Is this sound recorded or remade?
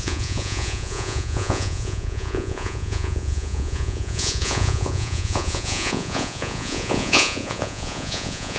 remade